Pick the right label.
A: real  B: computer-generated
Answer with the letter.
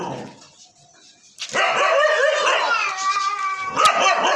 A